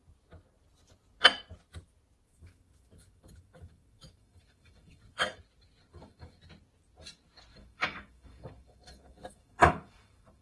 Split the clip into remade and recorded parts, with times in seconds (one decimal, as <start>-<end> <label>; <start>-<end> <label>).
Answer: 0.0-2.3 recorded; 2.3-5.4 remade; 5.4-5.9 recorded; 5.9-6.4 remade; 6.4-7.5 recorded; 7.5-10.4 remade